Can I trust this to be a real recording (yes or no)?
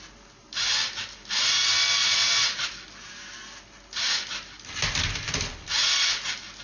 yes